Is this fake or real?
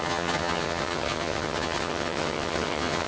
fake